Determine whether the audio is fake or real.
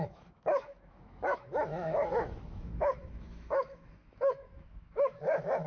fake